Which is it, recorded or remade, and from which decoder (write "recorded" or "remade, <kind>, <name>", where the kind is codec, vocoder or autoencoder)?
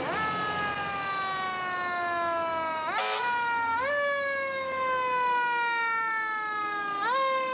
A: recorded